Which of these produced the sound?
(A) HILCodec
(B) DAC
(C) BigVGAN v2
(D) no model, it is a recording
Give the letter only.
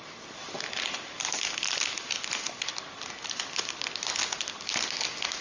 D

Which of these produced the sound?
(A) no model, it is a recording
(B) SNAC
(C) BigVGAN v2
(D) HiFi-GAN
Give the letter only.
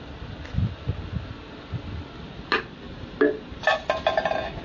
A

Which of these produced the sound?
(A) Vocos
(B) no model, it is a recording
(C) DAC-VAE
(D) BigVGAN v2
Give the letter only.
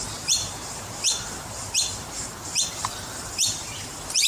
D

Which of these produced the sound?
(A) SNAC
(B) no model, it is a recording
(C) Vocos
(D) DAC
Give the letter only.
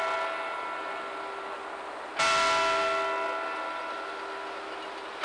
B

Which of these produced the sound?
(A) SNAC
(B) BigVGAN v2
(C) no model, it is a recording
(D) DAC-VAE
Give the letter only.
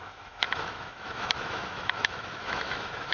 D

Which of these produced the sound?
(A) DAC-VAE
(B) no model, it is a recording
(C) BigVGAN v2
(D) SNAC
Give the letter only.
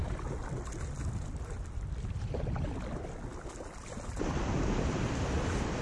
B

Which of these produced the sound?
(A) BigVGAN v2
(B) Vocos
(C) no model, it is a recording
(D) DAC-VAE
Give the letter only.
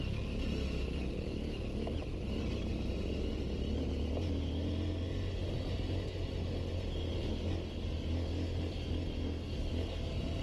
C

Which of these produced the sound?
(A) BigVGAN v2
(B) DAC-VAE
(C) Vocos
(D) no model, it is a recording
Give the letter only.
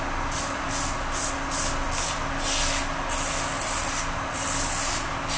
D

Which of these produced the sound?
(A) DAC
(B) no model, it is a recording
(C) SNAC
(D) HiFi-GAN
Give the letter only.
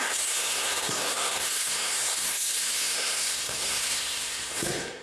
C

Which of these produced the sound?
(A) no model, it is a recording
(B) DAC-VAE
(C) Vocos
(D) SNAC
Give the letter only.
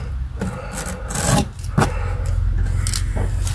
A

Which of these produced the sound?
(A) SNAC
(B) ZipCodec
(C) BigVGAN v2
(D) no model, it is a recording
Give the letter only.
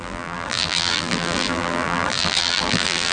C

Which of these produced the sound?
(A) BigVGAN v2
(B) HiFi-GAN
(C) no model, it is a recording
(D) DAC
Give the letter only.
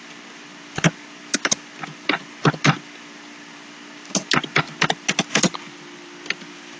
C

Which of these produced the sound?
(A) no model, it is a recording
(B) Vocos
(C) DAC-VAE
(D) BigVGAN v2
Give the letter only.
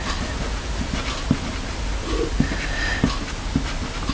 A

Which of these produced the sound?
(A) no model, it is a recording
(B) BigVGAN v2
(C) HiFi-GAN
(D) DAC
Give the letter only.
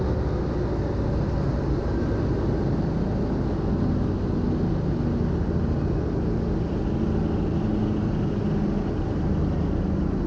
A